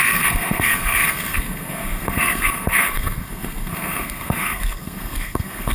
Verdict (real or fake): fake